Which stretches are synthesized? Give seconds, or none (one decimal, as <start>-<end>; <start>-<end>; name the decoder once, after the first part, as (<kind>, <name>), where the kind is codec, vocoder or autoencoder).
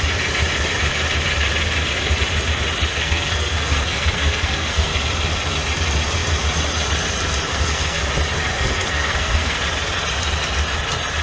2.9-4.9 (codec, SNAC); 7.5-8.0; 8.5-9.6